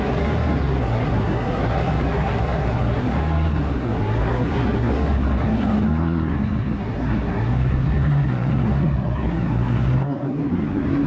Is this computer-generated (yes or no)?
yes